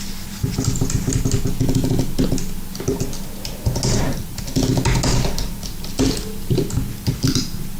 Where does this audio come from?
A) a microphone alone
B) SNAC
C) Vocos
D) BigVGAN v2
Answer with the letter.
A